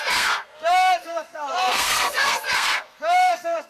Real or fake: fake